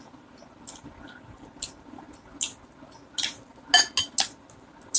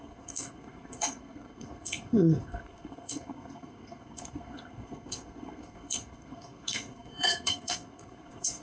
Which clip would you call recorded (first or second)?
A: first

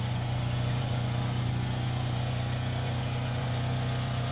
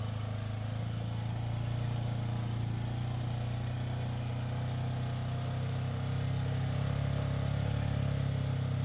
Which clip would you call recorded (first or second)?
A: second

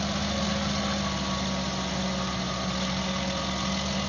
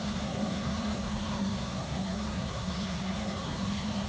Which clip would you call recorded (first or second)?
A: first